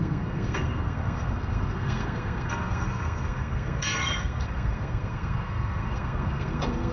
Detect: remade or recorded remade